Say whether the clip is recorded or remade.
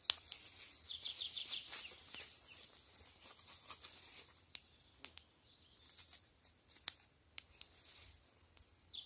recorded